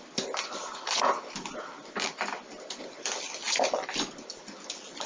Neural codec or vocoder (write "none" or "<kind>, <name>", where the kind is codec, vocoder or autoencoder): none